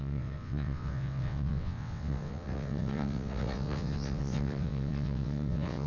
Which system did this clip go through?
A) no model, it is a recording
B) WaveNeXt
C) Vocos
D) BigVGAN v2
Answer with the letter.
B